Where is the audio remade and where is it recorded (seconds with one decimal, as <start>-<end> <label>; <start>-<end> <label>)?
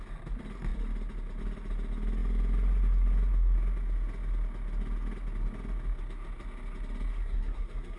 0.0-7.1 recorded; 7.1-8.0 remade